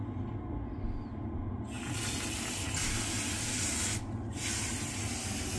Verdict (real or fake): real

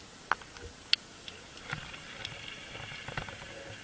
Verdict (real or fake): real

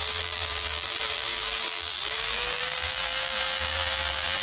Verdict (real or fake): fake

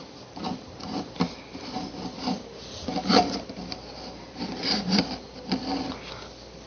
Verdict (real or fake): fake